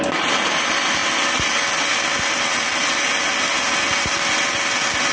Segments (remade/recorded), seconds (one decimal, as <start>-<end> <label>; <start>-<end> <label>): 0.0-5.1 recorded